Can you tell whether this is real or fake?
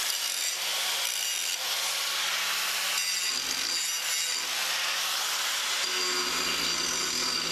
real